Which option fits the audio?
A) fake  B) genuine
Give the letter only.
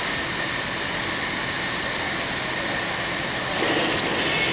B